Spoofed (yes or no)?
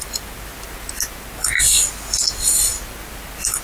no